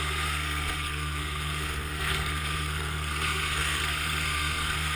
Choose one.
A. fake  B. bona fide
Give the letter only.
A